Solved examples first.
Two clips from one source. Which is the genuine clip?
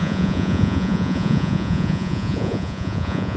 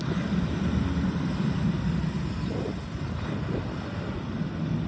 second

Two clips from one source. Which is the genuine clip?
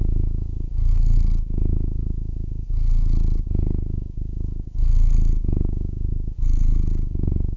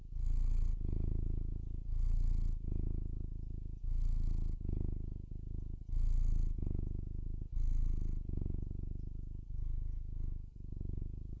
second